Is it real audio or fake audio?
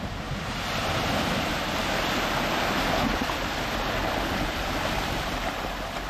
real